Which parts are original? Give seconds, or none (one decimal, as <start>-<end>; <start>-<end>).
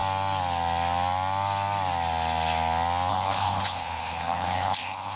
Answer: 0.0-3.1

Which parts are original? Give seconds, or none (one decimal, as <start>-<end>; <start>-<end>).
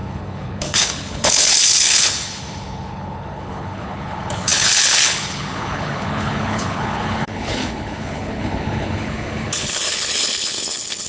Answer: none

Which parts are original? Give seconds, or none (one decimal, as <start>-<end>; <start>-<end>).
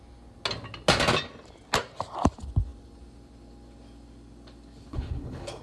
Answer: 0.0-4.9